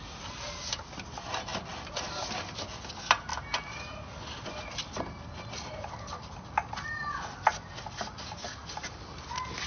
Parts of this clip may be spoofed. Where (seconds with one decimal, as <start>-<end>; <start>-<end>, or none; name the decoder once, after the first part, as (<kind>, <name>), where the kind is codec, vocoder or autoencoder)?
none